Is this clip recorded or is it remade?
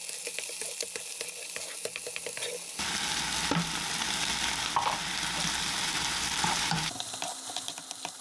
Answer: recorded